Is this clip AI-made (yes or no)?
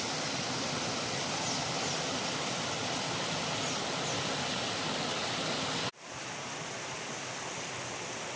no